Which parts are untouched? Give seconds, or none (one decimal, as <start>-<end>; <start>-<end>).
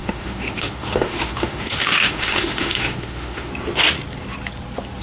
3.5-5.0